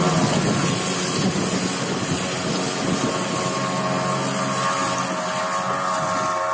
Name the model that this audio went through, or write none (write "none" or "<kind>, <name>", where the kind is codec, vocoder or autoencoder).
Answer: none